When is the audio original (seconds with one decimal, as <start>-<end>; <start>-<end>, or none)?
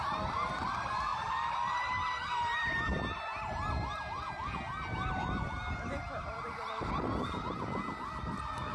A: 0.0-1.1; 2.8-8.7